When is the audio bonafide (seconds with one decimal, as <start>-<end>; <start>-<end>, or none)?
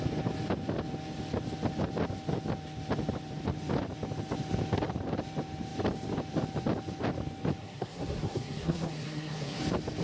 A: 0.0-7.6; 9.6-10.0